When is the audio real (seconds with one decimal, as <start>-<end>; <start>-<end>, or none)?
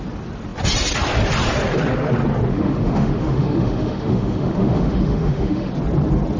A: 0.0-2.5; 5.7-6.4